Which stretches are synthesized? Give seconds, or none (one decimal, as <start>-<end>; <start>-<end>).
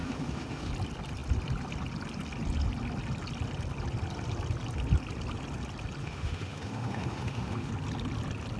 0.0-0.7; 6.0-7.7